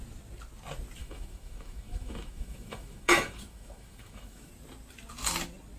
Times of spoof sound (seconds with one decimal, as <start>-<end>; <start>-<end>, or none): 1.0-4.5

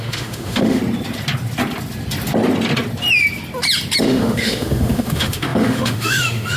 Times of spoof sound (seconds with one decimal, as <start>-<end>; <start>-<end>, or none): 0.0-0.8; 4.0-6.6

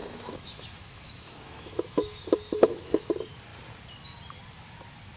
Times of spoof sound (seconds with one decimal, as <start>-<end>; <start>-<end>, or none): 0.0-3.1

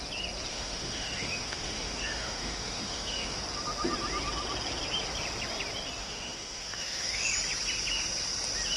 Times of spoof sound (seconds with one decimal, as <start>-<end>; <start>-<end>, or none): 0.5-3.4; 6.0-7.3

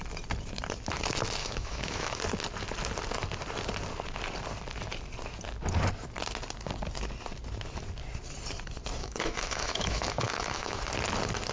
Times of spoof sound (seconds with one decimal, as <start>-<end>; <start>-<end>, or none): 1.4-2.2; 9.0-10.8

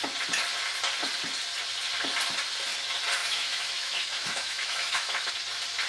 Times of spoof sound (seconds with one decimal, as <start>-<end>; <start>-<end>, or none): 3.2-5.3

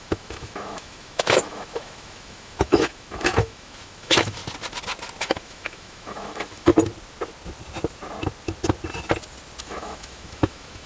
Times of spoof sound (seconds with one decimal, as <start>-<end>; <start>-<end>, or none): 0.0-4.4; 5.2-6.7; 9.6-10.9

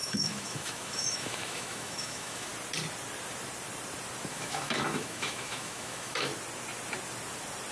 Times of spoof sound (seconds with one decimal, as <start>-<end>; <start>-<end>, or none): 0.0-2.5; 4.3-6.3